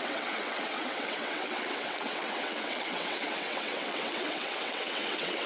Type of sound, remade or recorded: remade